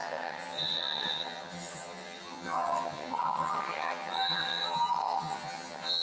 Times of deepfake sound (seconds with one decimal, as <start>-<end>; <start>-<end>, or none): 0.0-6.0

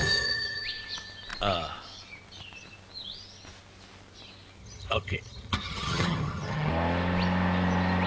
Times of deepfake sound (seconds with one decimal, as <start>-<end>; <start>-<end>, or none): 0.0-0.6; 4.6-6.7

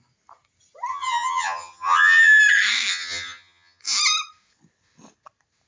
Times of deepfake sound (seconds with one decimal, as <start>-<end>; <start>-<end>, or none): 0.9-2.4; 2.9-3.8

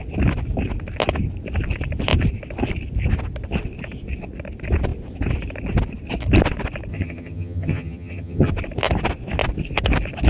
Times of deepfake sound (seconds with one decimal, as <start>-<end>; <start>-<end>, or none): 6.9-8.5

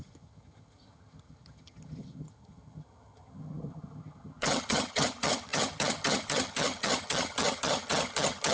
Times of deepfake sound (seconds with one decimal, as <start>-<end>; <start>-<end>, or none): 0.0-8.5

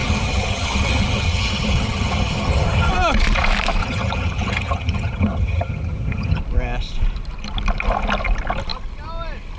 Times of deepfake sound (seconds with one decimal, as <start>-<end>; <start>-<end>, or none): 0.0-2.9; 3.8-6.4

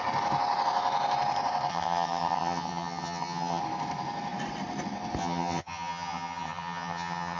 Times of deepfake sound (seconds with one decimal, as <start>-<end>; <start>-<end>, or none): 1.7-3.6; 5.2-7.4

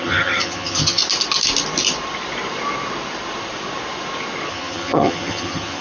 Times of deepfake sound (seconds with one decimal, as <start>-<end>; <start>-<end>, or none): 0.0-1.0; 4.5-5.8